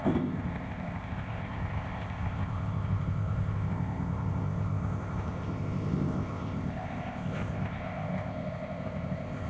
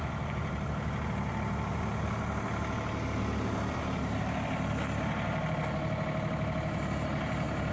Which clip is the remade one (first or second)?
first